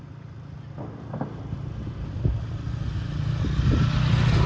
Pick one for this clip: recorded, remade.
recorded